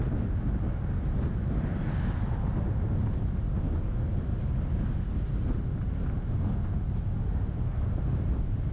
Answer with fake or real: real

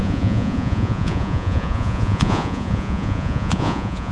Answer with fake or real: fake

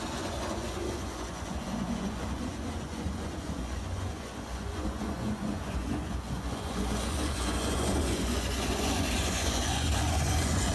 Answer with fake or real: fake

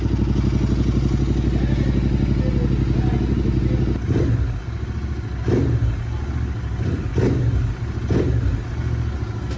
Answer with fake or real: real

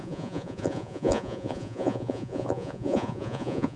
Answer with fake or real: fake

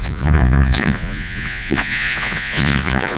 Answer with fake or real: fake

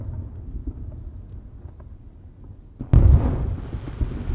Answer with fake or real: real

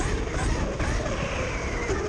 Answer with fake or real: real